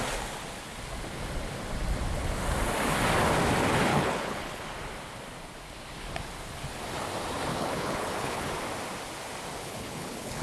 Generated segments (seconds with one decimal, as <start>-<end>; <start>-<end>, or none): 3.9-4.6; 7.5-8.5; 9.6-10.4